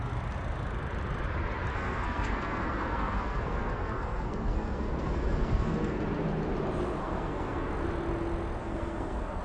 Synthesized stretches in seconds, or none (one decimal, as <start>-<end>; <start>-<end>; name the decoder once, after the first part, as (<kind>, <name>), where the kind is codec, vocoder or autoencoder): 1.7-6.0 (codec, SNAC); 7.0-7.7; 8.6-9.4